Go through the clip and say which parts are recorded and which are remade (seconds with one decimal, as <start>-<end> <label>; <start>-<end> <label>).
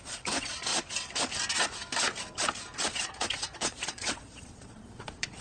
0.0-0.7 remade; 0.7-2.9 recorded; 2.9-5.4 remade